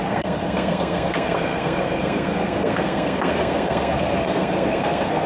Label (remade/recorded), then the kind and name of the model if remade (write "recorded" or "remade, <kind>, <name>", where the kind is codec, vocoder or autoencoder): remade, codec, SNAC